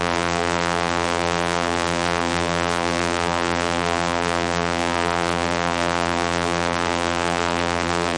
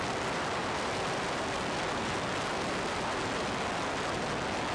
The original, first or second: second